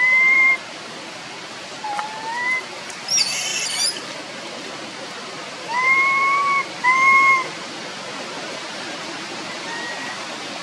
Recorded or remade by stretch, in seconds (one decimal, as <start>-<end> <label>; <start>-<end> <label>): 0.0-10.6 remade